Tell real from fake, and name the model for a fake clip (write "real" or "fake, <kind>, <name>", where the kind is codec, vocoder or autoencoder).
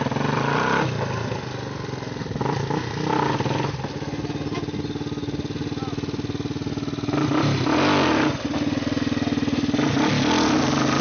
real